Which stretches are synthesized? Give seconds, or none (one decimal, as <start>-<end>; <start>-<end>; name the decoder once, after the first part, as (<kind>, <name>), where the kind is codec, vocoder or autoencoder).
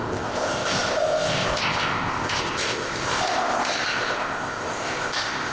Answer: 0.0-5.5 (codec, ZipCodec)